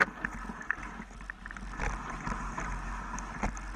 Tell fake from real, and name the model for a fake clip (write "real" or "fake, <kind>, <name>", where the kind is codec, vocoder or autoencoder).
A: real